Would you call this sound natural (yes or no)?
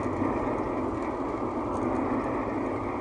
yes